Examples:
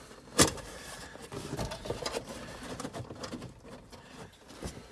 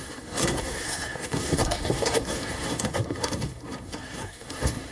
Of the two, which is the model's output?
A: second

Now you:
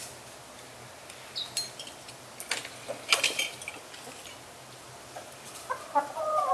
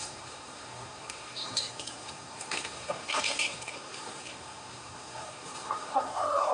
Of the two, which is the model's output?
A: second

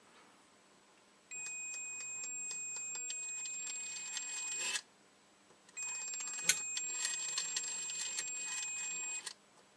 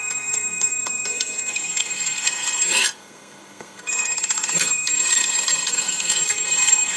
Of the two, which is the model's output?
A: second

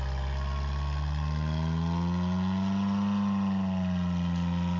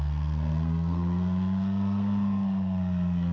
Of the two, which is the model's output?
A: second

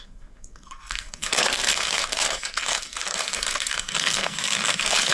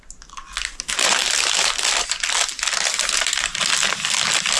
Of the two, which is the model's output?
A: first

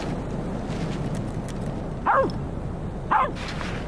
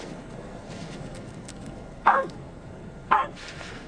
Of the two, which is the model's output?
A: second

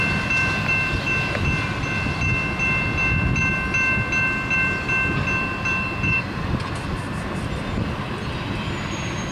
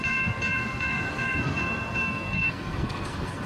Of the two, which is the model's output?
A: second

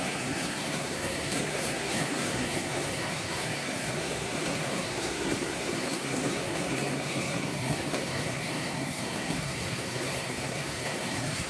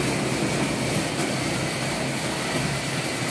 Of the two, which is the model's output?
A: first